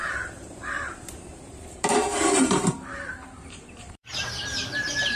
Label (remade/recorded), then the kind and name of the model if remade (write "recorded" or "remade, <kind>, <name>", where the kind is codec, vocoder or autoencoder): remade, vocoder, BigVGAN v2